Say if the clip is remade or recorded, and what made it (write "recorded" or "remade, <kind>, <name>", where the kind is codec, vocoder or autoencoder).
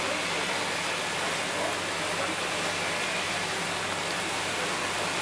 recorded